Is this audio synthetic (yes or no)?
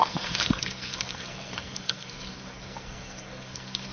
yes